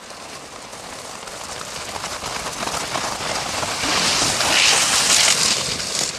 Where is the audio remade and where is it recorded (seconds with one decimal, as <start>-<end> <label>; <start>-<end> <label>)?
0.0-6.2 recorded